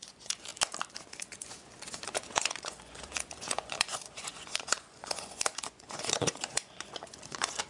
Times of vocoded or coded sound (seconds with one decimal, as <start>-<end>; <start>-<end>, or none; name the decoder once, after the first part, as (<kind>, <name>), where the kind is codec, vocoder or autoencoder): 0.0-0.5 (vocoder, Vocos); 1.1-7.7